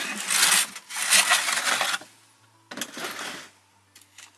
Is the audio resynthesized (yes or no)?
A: no